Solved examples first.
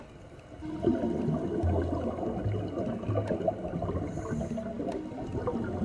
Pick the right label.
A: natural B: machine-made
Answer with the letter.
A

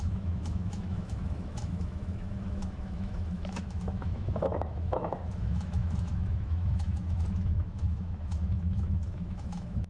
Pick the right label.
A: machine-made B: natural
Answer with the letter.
A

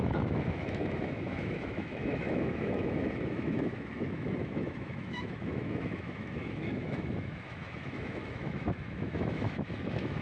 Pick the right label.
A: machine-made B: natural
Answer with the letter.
A